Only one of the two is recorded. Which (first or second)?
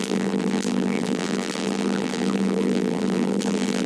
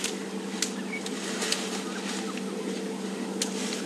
second